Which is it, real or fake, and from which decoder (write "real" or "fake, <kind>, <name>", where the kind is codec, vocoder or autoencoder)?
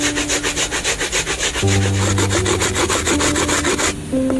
real